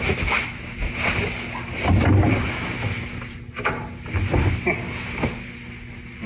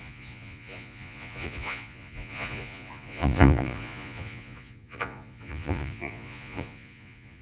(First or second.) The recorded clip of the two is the first